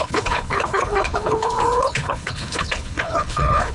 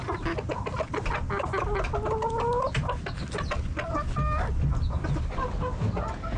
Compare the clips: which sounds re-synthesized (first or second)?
first